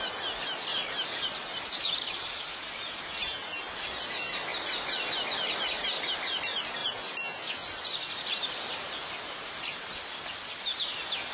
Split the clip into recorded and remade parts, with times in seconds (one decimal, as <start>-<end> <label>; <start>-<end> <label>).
0.0-0.7 recorded; 0.7-3.6 remade; 3.6-8.8 recorded; 8.8-9.9 remade; 9.9-11.3 recorded